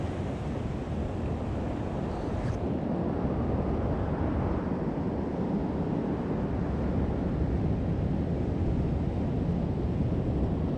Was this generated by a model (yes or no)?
no